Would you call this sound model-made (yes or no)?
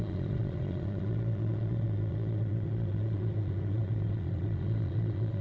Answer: yes